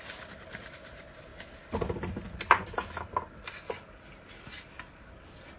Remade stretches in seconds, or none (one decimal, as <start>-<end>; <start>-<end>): none